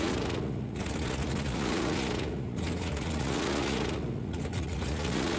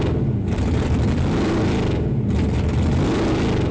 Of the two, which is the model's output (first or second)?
first